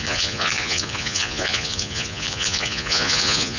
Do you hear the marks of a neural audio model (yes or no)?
yes